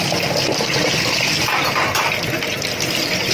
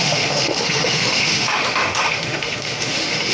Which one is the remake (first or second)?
second